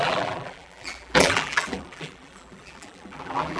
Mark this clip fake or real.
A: fake